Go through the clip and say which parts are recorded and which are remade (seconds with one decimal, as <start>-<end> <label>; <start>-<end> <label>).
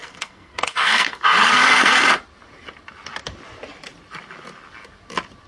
0.0-2.0 remade; 2.0-5.5 recorded